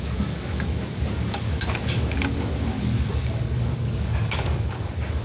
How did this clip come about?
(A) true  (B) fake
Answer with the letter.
B